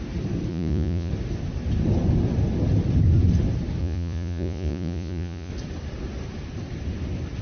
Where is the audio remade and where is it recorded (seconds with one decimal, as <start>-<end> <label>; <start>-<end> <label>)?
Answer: 0.0-0.5 recorded; 0.5-1.1 remade; 1.1-3.8 recorded; 3.8-5.5 remade; 5.5-7.4 recorded